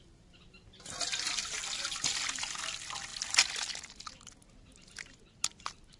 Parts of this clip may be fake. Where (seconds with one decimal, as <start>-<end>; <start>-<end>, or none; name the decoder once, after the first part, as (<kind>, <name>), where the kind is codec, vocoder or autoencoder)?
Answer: none